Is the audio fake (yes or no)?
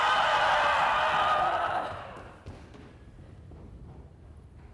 no